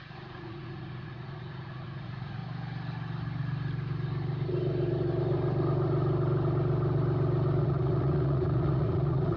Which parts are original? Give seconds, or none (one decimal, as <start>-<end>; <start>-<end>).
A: 2.4-7.6